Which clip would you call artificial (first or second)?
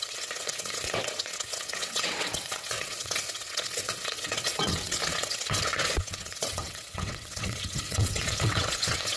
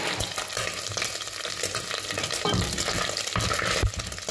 first